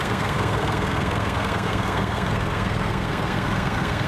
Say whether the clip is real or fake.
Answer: fake